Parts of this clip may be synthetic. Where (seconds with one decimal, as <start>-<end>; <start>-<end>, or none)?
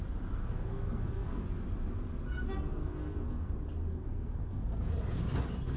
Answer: 0.4-1.4; 2.8-3.5; 3.9-4.9